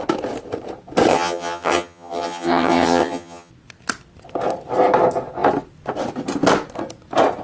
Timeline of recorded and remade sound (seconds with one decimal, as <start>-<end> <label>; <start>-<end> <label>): 0.0-1.1 recorded; 1.1-3.5 remade; 3.5-7.4 recorded